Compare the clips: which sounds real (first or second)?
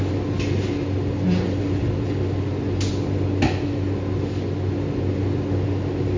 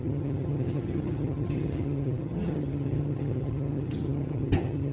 first